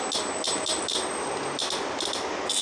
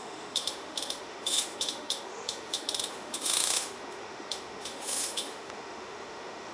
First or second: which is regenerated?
second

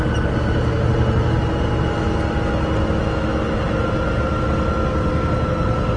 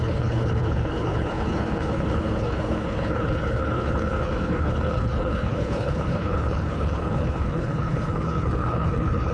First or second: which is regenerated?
second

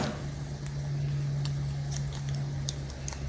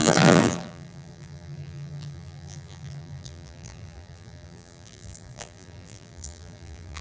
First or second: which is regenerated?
second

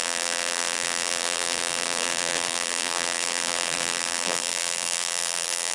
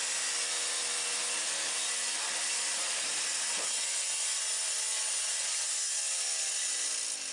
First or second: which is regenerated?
first